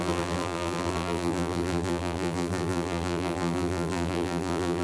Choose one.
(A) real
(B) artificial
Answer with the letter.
B